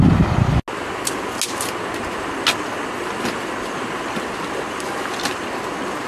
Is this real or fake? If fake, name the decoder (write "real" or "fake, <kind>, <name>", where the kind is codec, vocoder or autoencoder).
real